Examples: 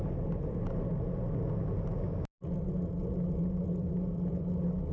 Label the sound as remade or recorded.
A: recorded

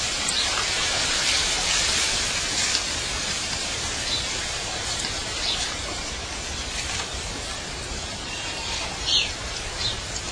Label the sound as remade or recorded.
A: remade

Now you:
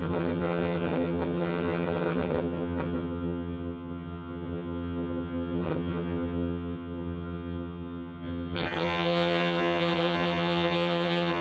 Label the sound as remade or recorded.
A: remade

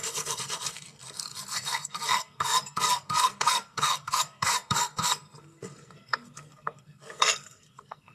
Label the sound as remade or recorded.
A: remade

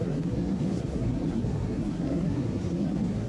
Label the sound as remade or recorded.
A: remade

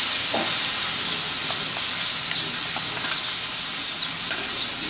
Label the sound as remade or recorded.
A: recorded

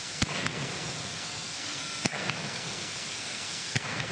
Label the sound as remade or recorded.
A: remade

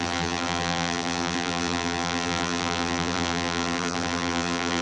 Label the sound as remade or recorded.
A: remade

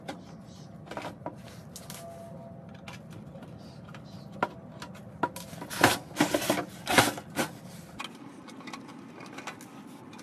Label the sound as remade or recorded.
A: recorded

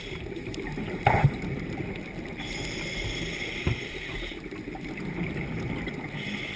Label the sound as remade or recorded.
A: recorded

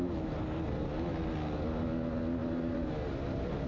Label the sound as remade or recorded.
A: recorded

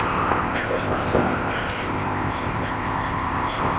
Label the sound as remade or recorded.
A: remade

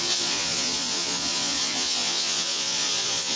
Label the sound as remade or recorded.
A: remade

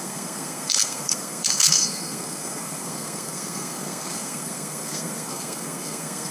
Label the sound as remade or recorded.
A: remade